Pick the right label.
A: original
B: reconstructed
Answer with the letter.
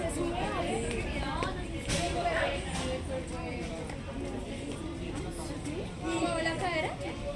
A